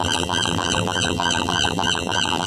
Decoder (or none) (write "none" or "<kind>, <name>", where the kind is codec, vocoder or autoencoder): vocoder, BigVGAN v2